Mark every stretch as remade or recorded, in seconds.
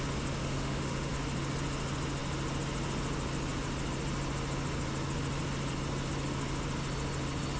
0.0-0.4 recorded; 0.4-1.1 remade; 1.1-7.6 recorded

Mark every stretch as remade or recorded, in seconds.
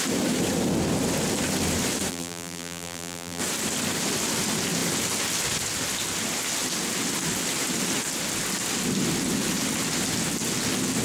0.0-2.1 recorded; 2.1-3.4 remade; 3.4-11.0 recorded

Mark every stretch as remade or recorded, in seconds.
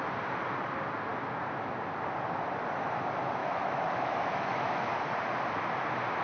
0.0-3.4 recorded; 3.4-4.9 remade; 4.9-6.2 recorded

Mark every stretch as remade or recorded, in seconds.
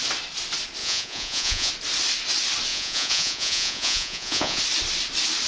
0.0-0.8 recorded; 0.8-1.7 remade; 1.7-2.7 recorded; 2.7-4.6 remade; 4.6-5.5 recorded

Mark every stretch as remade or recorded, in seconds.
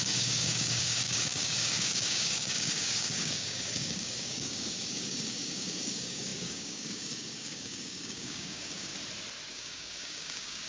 0.0-8.9 remade; 8.9-9.5 recorded; 9.5-10.7 remade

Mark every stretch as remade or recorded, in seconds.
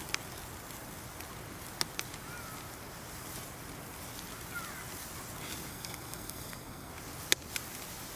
0.0-5.7 recorded; 5.7-6.9 remade; 6.9-8.2 recorded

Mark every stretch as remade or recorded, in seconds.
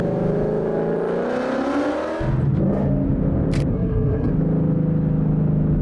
0.0-3.7 recorded; 3.7-4.3 remade; 4.3-5.8 recorded